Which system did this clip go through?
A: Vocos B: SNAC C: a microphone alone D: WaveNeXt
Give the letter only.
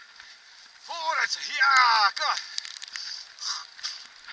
C